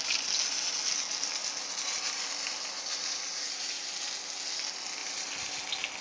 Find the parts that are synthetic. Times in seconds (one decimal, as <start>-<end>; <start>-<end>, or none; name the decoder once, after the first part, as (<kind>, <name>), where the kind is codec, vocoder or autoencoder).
none